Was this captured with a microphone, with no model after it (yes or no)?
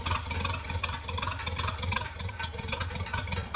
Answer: yes